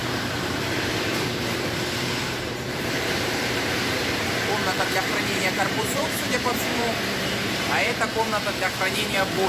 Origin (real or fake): fake